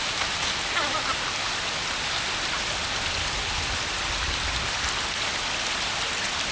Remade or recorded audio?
recorded